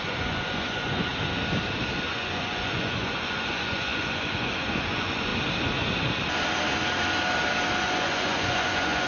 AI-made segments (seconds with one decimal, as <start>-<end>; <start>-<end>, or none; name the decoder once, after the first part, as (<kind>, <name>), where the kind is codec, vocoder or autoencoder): 0.0-1.1 (vocoder, Vocos); 2.1-5.3; 7.8-9.1